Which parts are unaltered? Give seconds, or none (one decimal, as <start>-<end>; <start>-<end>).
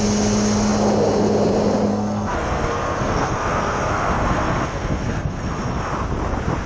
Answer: 0.0-1.9; 5.9-6.7